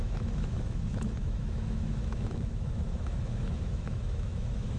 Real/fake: fake